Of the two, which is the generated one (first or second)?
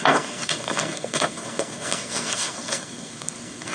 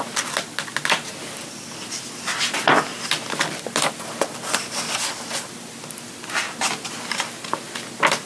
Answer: first